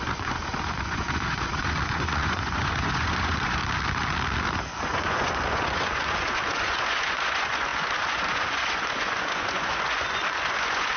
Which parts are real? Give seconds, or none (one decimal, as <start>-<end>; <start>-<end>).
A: 3.6-4.8

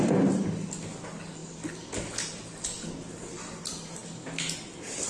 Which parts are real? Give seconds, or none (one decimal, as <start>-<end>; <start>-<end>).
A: 0.0-5.1

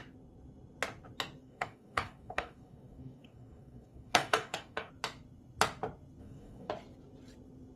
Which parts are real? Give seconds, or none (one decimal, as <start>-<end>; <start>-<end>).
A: 0.0-1.4; 4.9-6.2; 6.7-7.8

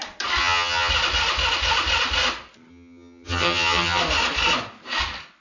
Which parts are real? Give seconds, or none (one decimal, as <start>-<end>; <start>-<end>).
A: 0.0-0.4; 0.9-2.7; 4.0-5.4

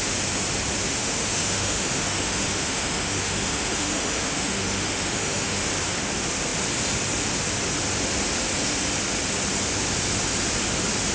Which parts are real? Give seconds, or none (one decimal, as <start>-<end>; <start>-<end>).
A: 0.0-0.9; 5.7-11.1

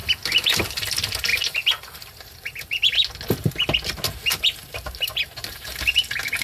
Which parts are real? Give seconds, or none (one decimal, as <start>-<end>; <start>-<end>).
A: 0.0-5.2; 6.0-6.4

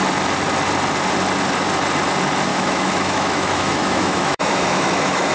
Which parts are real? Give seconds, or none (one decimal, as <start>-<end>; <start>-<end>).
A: 0.0-2.5

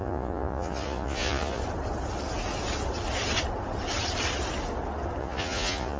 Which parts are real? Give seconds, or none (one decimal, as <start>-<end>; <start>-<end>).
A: 1.6-5.2